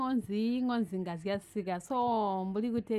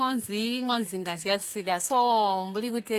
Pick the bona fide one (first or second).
first